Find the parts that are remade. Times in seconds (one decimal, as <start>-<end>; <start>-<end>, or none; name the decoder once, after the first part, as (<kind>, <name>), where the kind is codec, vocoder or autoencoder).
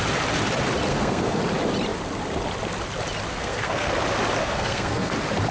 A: 0.9-1.4 (codec, SNAC); 3.3-3.9; 4.4-5.1